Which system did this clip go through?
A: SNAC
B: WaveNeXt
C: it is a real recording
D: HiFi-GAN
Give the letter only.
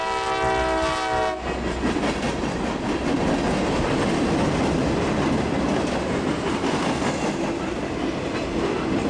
C